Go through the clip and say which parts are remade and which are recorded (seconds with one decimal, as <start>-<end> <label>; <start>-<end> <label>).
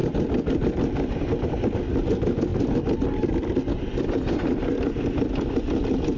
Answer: 0.0-0.6 remade; 0.6-6.2 recorded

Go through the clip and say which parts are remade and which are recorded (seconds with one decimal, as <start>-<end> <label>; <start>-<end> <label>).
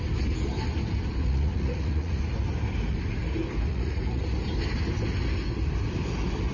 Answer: 0.0-1.2 recorded; 1.2-2.2 remade; 2.2-3.7 recorded; 3.7-4.2 remade; 4.2-6.5 recorded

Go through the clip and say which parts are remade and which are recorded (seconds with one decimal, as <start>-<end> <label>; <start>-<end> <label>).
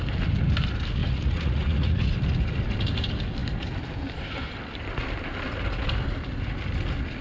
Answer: 0.0-1.0 recorded; 1.0-2.1 remade; 2.1-7.2 recorded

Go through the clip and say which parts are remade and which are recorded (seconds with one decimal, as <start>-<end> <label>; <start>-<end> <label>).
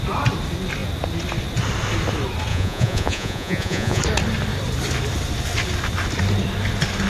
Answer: 0.0-2.5 recorded; 2.5-4.0 remade; 4.0-7.1 recorded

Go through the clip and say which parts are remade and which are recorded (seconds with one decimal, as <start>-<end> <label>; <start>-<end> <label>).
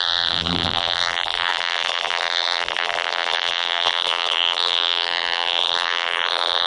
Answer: 0.0-6.7 remade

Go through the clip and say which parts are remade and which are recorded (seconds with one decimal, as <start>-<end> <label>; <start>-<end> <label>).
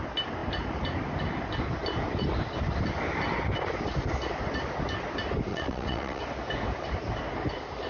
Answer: 0.0-5.5 recorded; 5.5-6.2 remade; 6.2-7.9 recorded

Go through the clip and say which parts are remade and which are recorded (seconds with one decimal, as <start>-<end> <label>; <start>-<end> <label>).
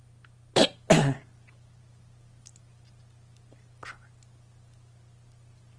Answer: 0.0-5.8 recorded